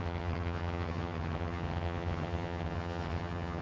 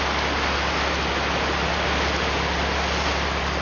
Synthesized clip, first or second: first